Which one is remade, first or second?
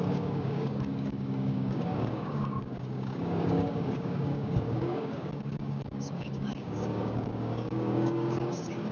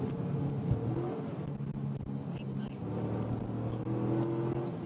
first